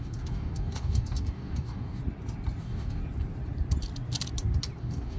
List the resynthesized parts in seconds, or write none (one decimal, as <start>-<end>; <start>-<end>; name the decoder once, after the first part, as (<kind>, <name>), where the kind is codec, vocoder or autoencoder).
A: 0.0-2.0 (codec, DAC); 2.6-3.0; 4.8-5.2